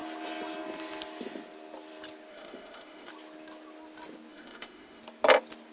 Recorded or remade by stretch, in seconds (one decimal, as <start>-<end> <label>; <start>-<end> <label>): 0.0-2.3 recorded; 2.3-3.1 remade; 3.1-4.3 recorded; 4.3-5.0 remade; 5.0-5.7 recorded